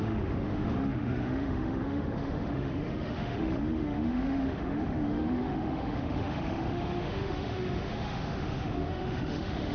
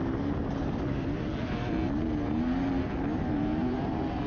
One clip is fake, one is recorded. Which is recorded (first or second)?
second